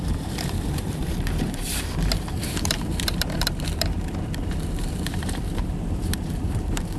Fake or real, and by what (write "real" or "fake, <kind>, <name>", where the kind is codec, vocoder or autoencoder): fake, vocoder, BigVGAN v2